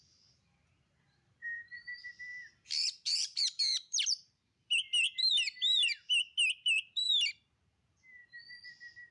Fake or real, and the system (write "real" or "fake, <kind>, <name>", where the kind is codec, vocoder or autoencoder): fake, vocoder, BigVGAN v2